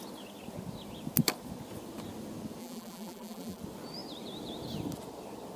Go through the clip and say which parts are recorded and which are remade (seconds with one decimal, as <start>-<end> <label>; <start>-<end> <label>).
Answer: 0.0-2.6 recorded; 2.6-3.6 remade; 3.6-5.6 recorded